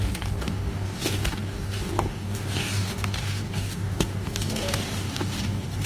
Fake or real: fake